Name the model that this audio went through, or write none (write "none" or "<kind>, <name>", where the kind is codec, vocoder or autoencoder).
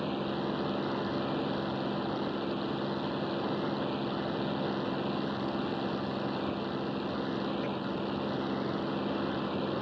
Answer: none